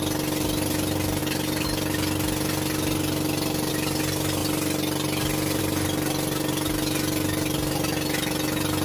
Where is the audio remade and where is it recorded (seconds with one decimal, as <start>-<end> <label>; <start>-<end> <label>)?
0.0-8.8 recorded